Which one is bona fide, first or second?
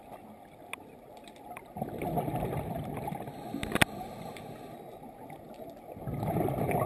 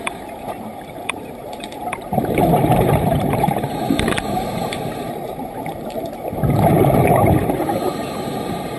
first